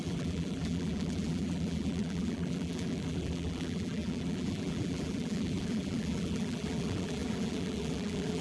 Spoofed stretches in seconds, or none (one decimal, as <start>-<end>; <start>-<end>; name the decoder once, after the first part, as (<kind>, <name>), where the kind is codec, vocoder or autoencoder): 0.0-8.4 (vocoder, BigVGAN v2)